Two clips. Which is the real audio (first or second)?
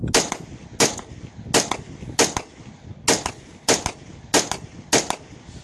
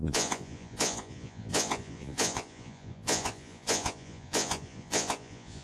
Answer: first